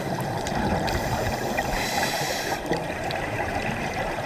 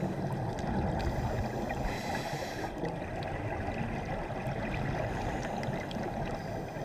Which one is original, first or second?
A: second